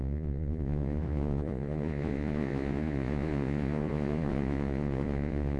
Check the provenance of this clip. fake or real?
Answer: fake